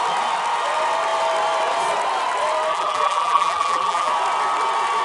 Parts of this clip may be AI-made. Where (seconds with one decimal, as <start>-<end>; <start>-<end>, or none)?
2.7-4.1